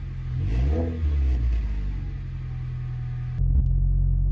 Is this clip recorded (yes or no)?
yes